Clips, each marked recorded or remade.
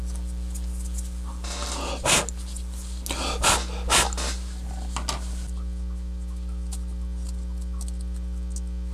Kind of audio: recorded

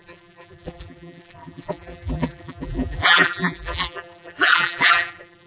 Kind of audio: remade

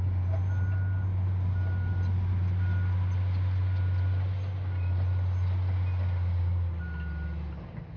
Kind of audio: recorded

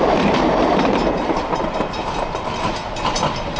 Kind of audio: remade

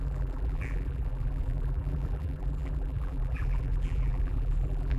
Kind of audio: remade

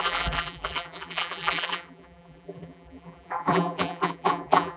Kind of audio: remade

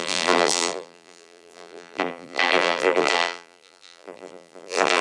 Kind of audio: remade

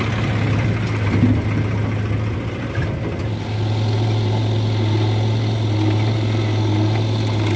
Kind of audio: recorded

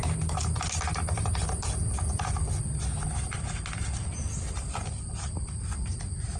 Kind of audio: recorded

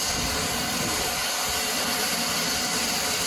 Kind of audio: recorded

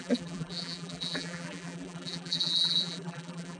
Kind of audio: remade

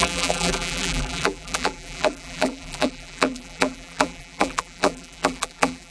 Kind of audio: remade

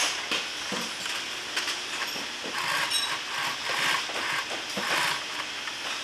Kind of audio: recorded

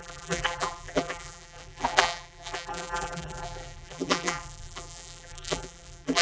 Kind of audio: remade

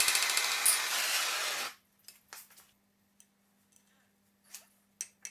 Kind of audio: recorded